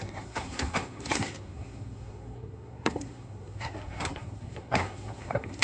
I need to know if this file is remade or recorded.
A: remade